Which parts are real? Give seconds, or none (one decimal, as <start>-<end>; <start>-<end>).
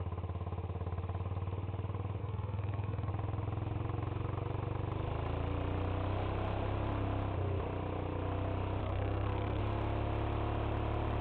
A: 0.0-2.2; 3.1-8.8; 9.6-11.2